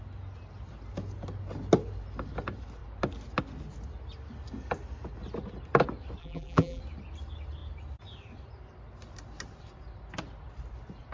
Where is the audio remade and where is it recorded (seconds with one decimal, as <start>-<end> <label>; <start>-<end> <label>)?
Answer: 0.0-6.2 recorded; 6.2-6.8 remade; 6.8-11.1 recorded